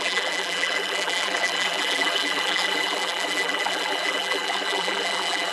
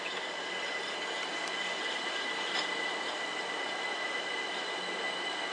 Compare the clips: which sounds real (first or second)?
second